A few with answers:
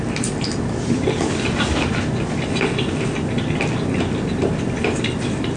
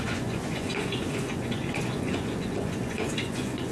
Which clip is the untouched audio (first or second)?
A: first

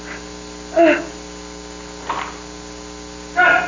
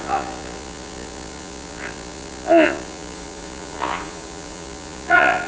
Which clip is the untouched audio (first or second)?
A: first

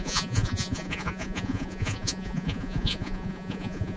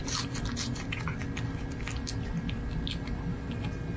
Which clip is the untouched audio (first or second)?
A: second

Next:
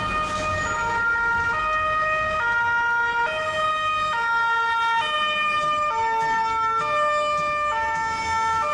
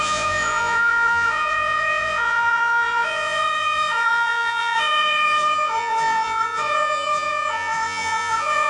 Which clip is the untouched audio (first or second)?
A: first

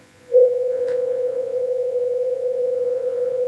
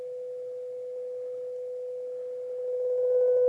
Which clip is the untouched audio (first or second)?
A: second